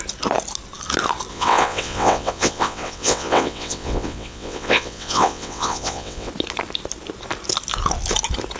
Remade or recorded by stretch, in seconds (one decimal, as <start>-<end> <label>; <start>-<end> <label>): 0.0-1.3 recorded; 1.3-6.3 remade; 6.3-8.6 recorded